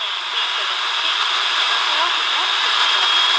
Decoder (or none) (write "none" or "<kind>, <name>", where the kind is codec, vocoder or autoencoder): none